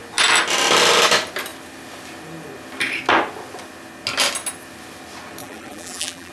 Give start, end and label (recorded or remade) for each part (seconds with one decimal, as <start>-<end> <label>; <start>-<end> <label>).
0.0-5.4 recorded; 5.4-6.3 remade